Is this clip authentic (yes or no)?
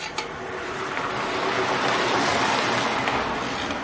yes